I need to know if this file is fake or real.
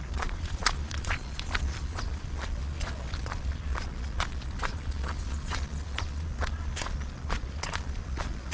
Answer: fake